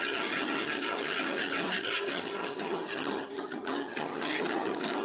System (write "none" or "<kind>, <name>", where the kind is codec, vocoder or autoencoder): vocoder, HiFi-GAN